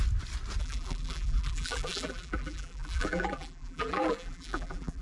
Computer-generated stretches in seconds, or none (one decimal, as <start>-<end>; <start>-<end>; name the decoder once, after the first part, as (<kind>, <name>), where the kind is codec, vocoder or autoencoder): 0.6-5.0 (vocoder, BigVGAN v2)